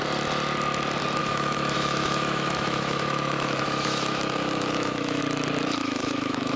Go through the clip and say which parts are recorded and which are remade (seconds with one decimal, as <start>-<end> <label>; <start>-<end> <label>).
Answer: 0.0-1.2 recorded; 1.2-5.2 remade; 5.2-5.8 recorded; 5.8-6.6 remade